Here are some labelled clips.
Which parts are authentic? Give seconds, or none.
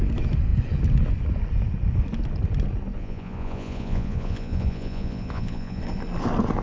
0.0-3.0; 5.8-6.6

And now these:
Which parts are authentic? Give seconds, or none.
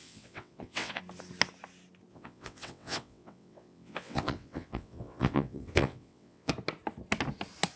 1.0-2.1; 6.5-7.8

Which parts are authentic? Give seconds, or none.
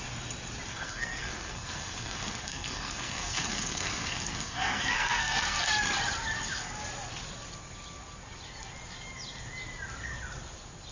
0.0-0.7; 5.7-10.9